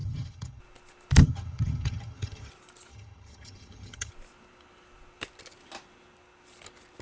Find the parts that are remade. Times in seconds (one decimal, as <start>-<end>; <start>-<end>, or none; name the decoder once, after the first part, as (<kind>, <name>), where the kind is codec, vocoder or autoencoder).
0.0-0.6 (vocoder, HiFi-GAN); 1.2-2.5; 2.9-4.1